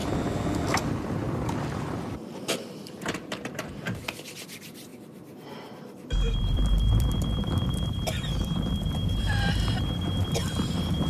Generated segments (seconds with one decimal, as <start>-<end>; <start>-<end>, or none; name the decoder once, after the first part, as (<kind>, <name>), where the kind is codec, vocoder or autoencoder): 0.8-11.1 (vocoder, BigVGAN v2)